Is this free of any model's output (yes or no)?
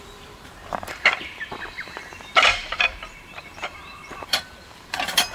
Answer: no